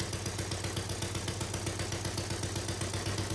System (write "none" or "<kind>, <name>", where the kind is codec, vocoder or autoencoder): none